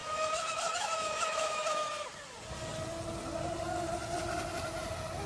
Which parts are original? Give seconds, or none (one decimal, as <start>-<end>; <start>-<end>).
1.9-5.3